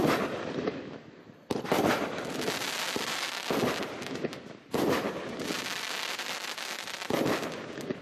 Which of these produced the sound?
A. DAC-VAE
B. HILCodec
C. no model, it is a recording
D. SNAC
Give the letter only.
C